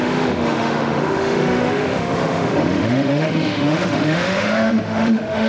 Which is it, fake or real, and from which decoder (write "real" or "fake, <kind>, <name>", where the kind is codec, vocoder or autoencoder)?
fake, autoencoder, DAC-VAE